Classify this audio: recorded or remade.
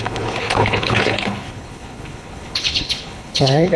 remade